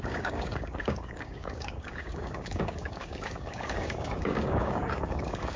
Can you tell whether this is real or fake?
fake